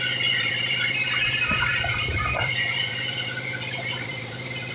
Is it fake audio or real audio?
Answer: fake